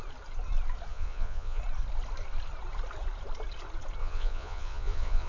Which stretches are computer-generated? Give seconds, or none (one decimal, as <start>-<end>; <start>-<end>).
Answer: 0.9-1.6; 4.0-5.3

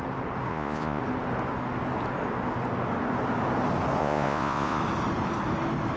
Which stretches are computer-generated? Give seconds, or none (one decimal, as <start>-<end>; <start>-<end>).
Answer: 0.5-1.0; 4.0-4.8

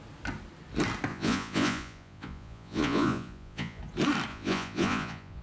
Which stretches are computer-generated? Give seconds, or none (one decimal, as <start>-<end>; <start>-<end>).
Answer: 1.1-3.8; 4.3-5.4

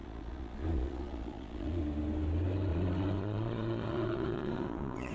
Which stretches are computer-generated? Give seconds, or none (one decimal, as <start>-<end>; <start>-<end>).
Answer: 0.0-1.8; 2.7-5.1

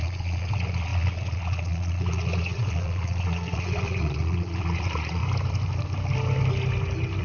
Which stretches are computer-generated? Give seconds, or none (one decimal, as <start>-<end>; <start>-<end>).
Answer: 0.0-5.2

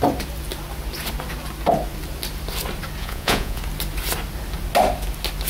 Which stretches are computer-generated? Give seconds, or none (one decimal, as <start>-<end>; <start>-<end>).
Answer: 3.0-3.6

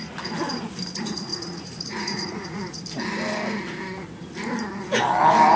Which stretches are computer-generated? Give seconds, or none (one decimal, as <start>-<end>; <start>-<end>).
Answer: 1.3-2.8